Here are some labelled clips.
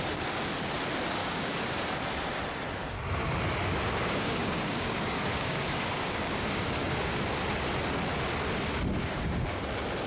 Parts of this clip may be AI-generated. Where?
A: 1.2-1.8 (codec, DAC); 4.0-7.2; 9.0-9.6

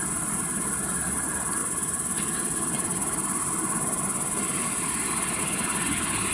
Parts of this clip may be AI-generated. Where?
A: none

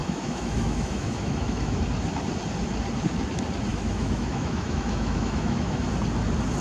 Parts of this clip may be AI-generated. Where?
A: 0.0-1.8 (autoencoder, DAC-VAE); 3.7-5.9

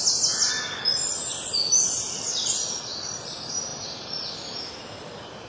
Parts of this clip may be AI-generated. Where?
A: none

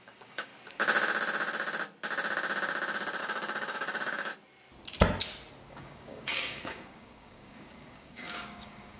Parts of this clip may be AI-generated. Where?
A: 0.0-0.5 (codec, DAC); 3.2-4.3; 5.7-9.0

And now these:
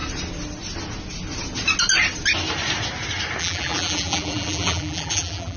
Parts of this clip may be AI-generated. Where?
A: 3.4-5.6 (vocoder, BigVGAN v2)

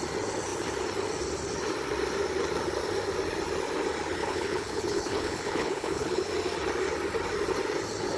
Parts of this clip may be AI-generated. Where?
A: 4.2-6.3 (codec, HILCodec)

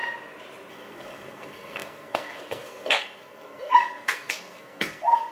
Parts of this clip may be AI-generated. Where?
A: 0.7-5.3 (codec, SNAC)